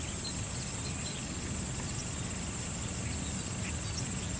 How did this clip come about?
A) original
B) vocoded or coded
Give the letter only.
A